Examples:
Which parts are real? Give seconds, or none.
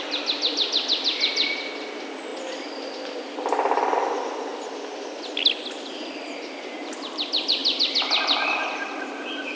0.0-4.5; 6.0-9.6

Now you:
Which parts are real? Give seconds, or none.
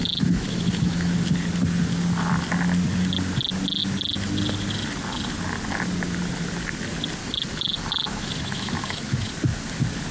1.1-7.2; 9.3-10.1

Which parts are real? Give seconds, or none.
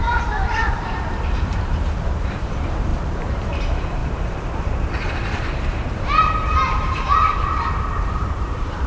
4.0-4.9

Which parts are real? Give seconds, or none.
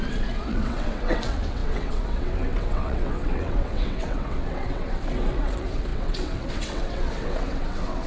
none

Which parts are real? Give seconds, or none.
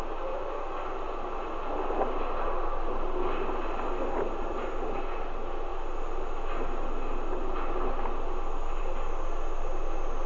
0.0-10.3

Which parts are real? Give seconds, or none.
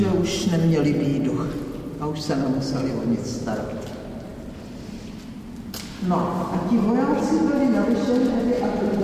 0.0-9.0